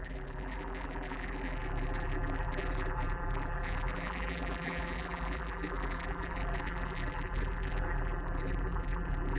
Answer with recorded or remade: remade